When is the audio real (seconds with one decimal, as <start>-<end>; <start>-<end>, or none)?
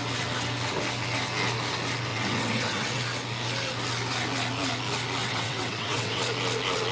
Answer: 0.0-2.1; 3.0-5.2; 6.2-6.9